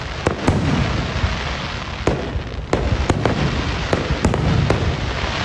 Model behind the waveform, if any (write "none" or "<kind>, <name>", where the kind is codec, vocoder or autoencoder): none